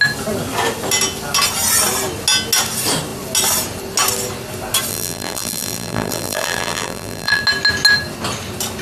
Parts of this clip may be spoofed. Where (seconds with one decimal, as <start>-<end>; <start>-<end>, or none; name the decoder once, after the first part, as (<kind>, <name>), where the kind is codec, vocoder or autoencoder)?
4.9-7.4 (vocoder, BigVGAN v2)